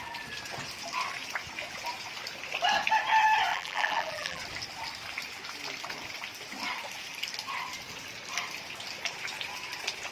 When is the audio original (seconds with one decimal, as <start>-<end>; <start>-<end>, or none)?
0.0-3.5; 4.4-10.1